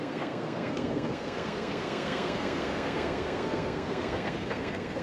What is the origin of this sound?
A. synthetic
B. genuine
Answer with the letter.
A